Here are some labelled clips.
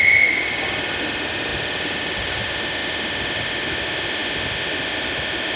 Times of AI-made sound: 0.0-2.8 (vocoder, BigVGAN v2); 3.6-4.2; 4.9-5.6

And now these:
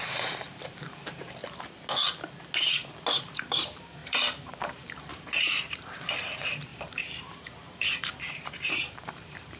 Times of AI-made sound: 0.0-1.4 (vocoder, BigVGAN v2); 3.3-9.6

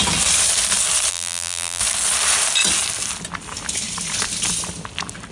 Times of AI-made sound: 1.1-1.8 (vocoder, BigVGAN v2)

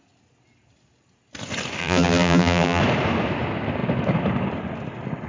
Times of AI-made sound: 1.8-2.8 (vocoder, BigVGAN v2)

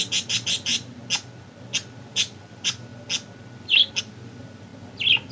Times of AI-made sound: 0.0-0.7 (vocoder, BigVGAN v2); 2.0-2.9; 4.0-4.7

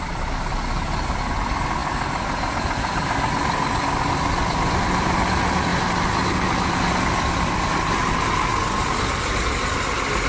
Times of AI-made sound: 0.0-8.5 (vocoder, BigVGAN v2); 9.1-10.3

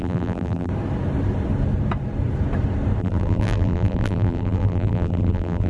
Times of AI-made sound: 0.0-0.7 (vocoder, BigVGAN v2); 3.0-5.7